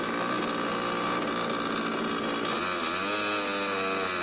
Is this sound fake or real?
real